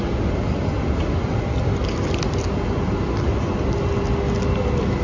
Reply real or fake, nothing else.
real